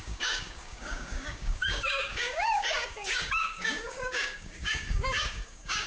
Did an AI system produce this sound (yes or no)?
yes